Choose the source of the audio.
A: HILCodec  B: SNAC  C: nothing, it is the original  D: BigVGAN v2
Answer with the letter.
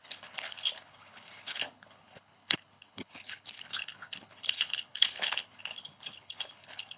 A